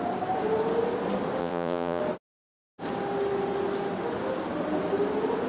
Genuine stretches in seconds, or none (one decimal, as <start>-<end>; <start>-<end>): 0.0-1.4; 2.0-5.5